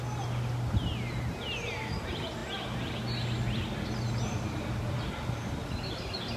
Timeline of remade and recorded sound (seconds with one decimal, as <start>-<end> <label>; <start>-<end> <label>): 0.0-6.4 recorded

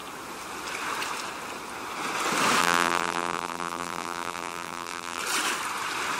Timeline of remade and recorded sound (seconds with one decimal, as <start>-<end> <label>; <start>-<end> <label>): 0.0-2.6 recorded; 2.6-5.2 remade; 5.2-6.2 recorded

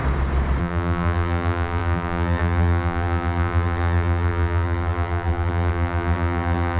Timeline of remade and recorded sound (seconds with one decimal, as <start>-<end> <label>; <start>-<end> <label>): 0.0-0.6 recorded; 0.6-6.8 remade

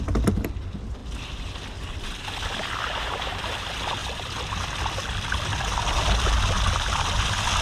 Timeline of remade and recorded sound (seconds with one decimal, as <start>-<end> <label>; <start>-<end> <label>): 0.0-4.0 recorded; 4.0-5.8 remade; 5.8-7.6 recorded

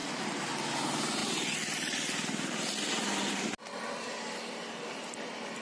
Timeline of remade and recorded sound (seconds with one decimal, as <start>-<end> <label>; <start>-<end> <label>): 0.0-0.5 remade; 0.5-5.6 recorded

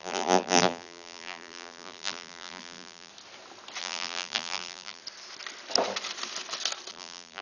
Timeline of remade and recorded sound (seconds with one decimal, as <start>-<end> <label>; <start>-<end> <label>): 0.0-3.1 remade; 3.1-3.8 recorded; 3.8-5.0 remade; 5.0-6.9 recorded; 6.9-7.4 remade

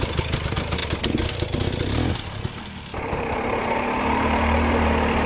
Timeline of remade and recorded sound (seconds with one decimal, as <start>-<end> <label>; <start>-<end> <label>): 0.0-5.3 recorded